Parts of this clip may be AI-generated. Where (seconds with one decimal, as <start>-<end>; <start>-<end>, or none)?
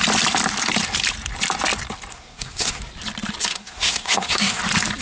2.1-2.8; 3.5-4.6